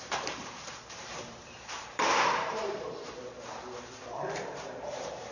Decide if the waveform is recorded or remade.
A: remade